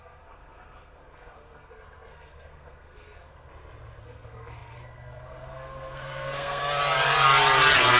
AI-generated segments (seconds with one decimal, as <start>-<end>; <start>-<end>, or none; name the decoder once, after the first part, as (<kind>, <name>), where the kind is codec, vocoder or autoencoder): 0.0-3.5 (codec, SNAC); 4.0-6.6